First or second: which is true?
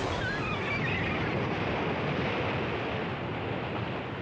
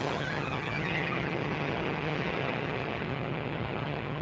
first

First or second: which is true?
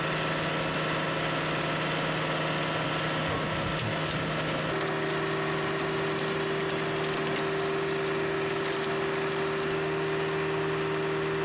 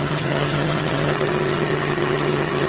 first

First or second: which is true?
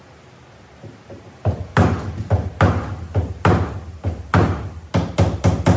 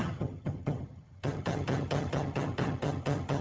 first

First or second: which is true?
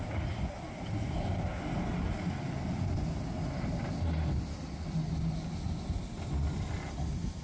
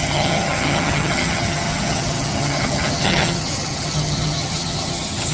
first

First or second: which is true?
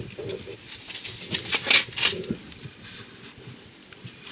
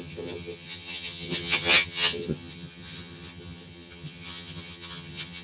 first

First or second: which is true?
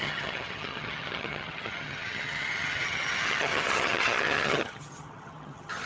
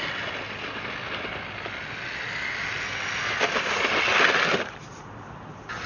second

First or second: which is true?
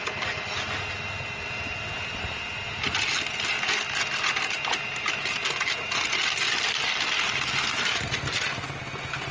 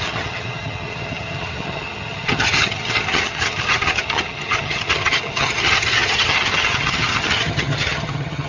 first